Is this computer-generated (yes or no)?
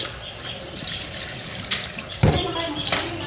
no